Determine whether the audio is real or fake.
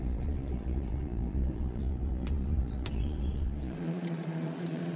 fake